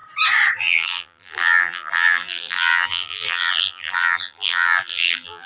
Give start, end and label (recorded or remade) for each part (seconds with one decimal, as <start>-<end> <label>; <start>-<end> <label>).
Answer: 0.0-0.6 recorded; 0.6-5.5 remade